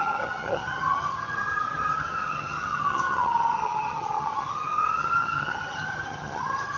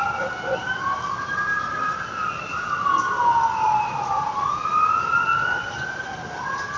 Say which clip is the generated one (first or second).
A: first